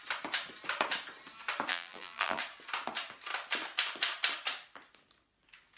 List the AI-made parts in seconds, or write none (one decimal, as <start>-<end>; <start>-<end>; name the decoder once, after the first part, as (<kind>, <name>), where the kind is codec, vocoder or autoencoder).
1.7-2.4 (vocoder, BigVGAN v2)